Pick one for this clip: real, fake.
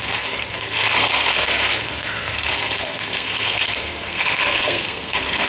fake